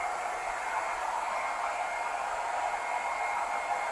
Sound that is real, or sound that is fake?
real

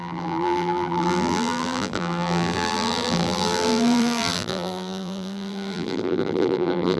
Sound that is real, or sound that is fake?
fake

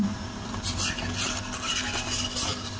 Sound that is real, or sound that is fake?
fake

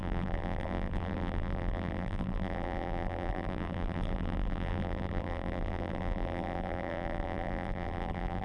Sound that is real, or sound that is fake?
fake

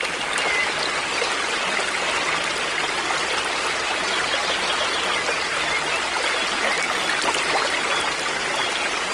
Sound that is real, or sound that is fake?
real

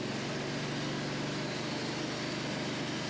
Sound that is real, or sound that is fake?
real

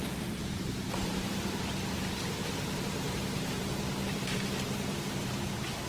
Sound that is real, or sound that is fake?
fake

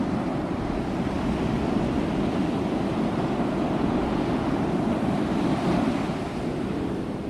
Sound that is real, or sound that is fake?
fake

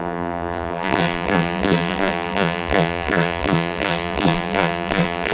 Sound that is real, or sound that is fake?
fake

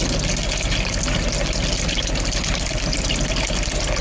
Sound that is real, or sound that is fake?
real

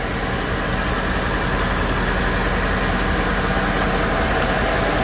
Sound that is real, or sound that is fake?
real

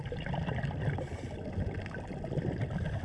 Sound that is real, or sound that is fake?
real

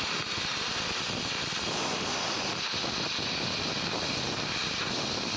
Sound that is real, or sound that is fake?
real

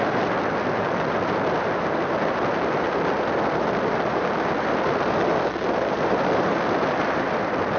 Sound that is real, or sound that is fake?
fake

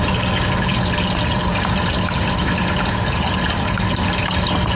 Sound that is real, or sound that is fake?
real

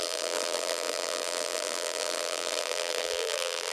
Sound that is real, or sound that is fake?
fake